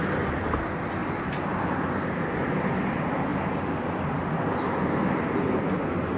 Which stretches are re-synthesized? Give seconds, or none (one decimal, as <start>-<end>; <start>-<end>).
none